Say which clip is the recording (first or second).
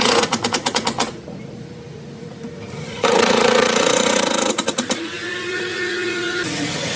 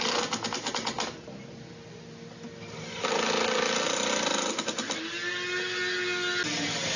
second